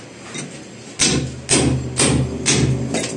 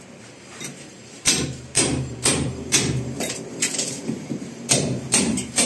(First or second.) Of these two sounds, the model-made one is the second